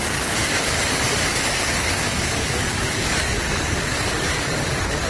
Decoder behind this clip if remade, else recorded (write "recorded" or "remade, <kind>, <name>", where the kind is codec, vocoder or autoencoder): remade, codec, DAC